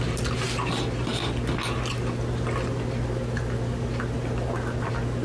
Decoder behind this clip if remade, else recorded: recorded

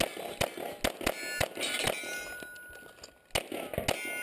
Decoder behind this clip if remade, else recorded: recorded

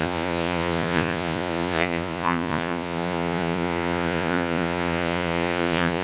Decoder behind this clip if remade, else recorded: remade, vocoder, Vocos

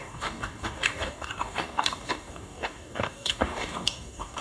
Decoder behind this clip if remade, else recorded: remade, codec, DAC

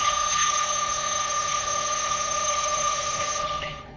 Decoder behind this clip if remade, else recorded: remade, codec, HILCodec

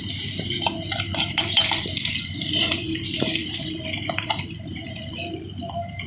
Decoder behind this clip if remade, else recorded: remade, vocoder, BigVGAN v2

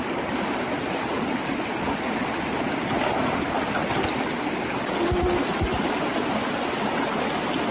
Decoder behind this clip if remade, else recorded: recorded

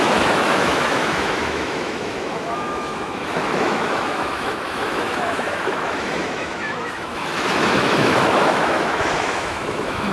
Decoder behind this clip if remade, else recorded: remade, autoencoder, DAC-VAE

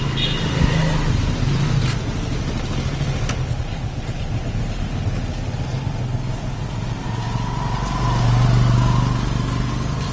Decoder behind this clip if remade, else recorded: recorded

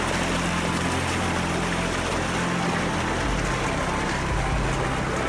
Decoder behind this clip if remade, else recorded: recorded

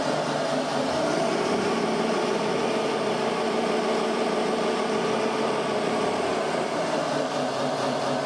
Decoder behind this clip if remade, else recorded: remade, vocoder, BigVGAN v2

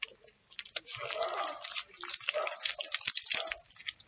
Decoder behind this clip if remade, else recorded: recorded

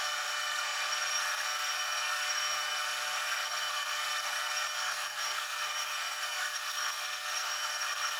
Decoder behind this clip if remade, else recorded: remade, codec, SNAC